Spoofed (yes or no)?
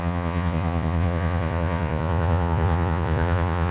yes